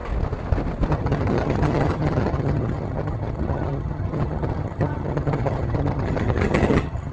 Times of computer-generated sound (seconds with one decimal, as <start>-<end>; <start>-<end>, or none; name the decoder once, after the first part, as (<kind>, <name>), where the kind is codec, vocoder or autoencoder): 0.9-7.1 (vocoder, HiFi-GAN)